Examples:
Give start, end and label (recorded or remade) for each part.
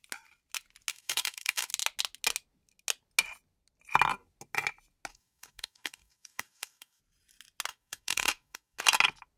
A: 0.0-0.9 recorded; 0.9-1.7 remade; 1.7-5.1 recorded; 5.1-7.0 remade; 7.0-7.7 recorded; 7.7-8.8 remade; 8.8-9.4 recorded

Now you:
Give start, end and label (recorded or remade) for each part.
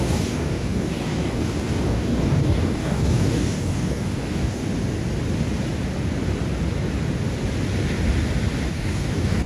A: 0.0-4.6 remade; 4.6-8.7 recorded; 8.7-9.5 remade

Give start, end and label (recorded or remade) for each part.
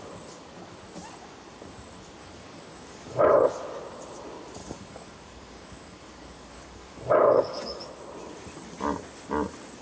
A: 0.0-2.2 recorded; 2.2-3.3 remade; 3.3-4.6 recorded; 4.6-7.8 remade; 7.8-9.8 recorded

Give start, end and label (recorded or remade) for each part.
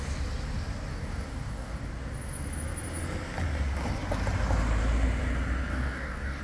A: 0.0-0.9 recorded; 0.9-1.9 remade; 1.9-5.7 recorded; 5.7-6.4 remade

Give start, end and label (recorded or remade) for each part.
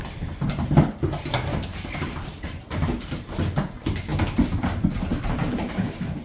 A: 0.0-1.5 recorded; 1.5-2.3 remade; 2.3-6.2 recorded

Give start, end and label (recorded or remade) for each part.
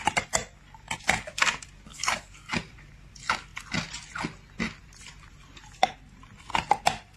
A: 0.0-1.9 recorded; 1.9-2.5 remade; 2.5-7.2 recorded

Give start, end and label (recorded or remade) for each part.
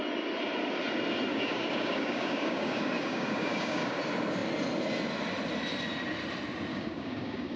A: 0.0-1.3 recorded; 1.3-4.0 remade; 4.0-6.7 recorded; 6.7-7.6 remade